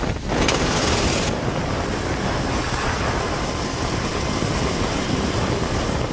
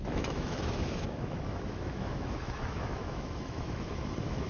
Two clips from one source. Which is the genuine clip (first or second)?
first